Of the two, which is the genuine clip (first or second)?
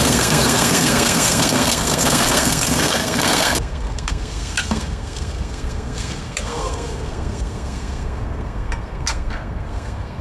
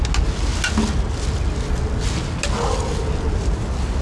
second